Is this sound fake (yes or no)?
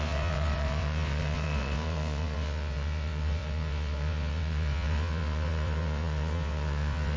yes